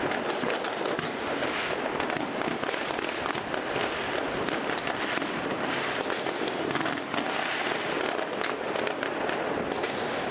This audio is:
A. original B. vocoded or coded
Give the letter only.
A